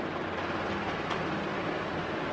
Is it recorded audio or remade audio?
recorded